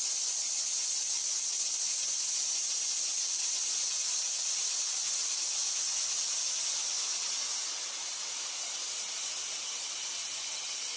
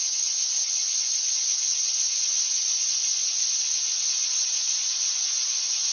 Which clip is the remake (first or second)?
second